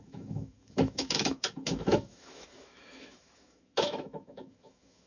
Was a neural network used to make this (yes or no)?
yes